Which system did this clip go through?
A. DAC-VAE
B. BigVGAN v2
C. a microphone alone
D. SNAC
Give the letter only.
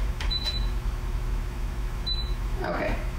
A